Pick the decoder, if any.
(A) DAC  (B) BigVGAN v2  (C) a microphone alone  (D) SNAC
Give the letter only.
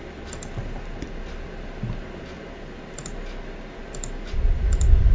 C